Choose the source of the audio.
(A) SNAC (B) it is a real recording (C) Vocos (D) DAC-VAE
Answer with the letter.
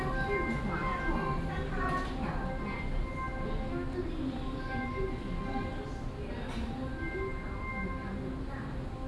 B